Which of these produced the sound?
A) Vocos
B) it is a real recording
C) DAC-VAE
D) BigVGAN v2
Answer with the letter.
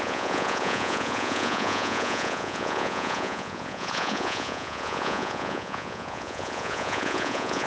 A